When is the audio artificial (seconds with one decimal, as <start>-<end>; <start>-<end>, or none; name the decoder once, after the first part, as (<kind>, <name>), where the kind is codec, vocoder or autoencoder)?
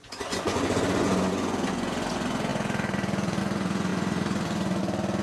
0.0-5.2 (vocoder, Vocos)